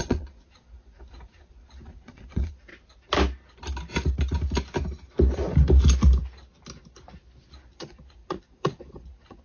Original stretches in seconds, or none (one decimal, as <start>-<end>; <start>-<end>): 2.7-7.7